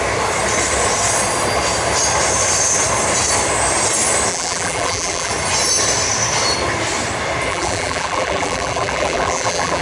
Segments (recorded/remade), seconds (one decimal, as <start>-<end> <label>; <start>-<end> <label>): 0.0-4.3 recorded; 4.3-5.3 remade; 5.3-7.5 recorded; 7.5-9.8 remade